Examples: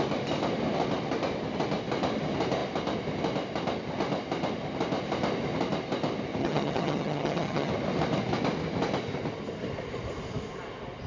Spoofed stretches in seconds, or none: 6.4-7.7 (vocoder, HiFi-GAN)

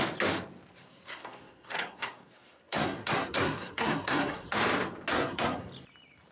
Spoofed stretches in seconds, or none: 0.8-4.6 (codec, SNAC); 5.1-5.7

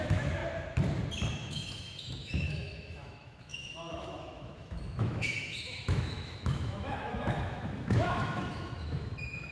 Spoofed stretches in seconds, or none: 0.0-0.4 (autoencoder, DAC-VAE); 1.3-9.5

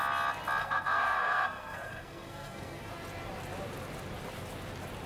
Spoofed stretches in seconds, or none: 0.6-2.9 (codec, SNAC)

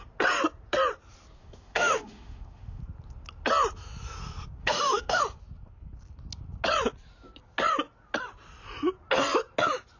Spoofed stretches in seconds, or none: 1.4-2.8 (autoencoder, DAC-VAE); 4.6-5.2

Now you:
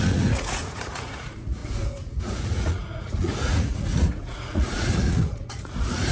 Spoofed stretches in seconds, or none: 0.0-6.1 (vocoder, Vocos)

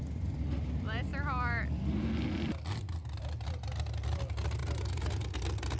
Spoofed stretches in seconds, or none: 4.6-5.2 (vocoder, BigVGAN v2)

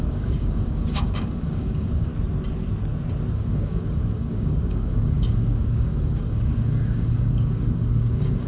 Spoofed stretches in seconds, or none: 0.0-2.1 (codec, DAC); 3.3-8.5